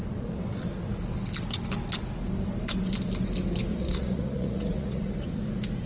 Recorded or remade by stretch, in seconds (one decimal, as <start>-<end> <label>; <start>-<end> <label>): 0.0-3.7 recorded; 3.7-5.4 remade; 5.4-5.9 recorded